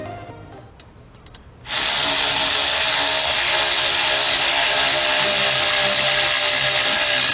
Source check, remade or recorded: recorded